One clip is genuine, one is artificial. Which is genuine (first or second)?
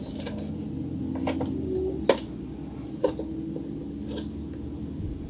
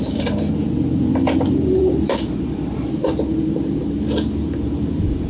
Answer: first